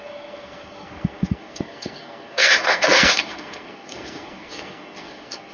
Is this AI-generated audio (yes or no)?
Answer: yes